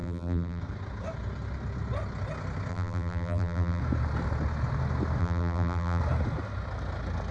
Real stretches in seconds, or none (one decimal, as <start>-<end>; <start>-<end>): 0.6-2.7; 3.8-5.2; 6.0-7.3